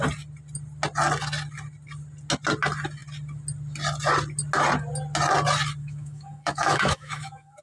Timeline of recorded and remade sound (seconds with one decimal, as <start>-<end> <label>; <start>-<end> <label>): 0.0-5.8 recorded; 5.8-7.6 remade